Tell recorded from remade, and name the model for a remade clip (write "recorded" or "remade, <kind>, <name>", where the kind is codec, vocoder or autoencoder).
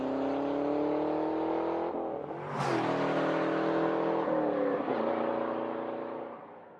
recorded